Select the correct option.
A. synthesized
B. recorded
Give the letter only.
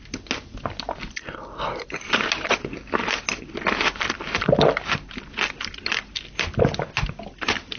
B